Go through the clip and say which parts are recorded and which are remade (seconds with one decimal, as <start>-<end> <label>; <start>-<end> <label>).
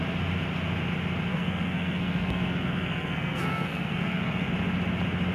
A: 0.0-1.3 recorded; 1.3-4.5 remade; 4.5-5.3 recorded